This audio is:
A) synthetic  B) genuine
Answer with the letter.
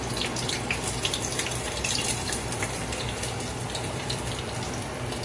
B